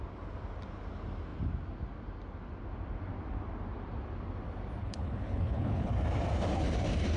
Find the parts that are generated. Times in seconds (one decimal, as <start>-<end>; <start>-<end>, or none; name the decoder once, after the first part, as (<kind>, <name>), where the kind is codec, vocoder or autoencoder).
4.8-5.9 (codec, HILCodec)